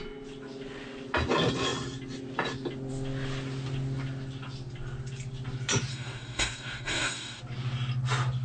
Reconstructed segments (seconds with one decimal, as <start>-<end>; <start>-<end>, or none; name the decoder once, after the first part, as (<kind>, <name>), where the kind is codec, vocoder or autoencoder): 5.9-7.4 (codec, DAC)